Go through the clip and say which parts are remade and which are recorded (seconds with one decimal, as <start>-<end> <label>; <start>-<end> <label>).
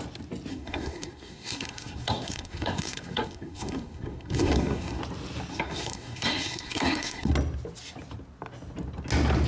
0.0-0.5 recorded; 0.5-5.0 remade; 5.0-5.5 recorded; 5.5-7.3 remade; 7.3-9.5 recorded